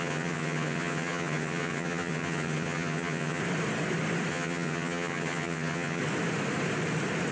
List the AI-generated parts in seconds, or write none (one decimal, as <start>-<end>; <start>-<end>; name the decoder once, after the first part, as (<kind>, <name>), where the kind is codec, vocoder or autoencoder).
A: 0.0-3.4 (vocoder, HiFi-GAN); 4.3-6.0